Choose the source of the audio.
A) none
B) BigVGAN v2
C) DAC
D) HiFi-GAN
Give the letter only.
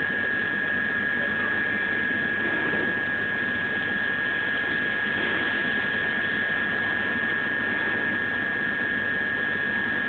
A